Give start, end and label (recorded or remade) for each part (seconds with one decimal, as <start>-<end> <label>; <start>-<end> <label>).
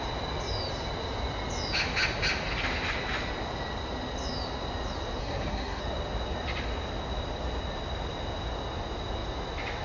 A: 0.0-5.2 recorded; 5.2-5.8 remade; 5.8-9.8 recorded